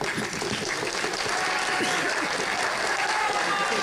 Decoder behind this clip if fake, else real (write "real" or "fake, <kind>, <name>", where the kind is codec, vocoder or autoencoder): real